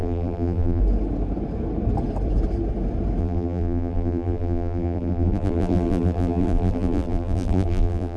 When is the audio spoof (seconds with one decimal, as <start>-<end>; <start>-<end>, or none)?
0.0-0.8; 3.2-8.2